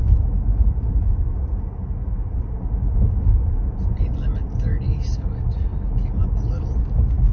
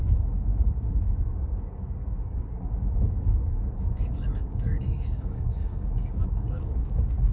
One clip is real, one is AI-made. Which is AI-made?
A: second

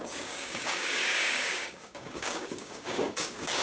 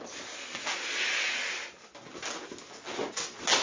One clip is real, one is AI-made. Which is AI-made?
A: first